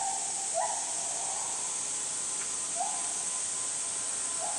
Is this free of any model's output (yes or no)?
yes